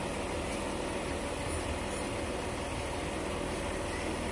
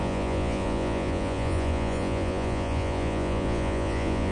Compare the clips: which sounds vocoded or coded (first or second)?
second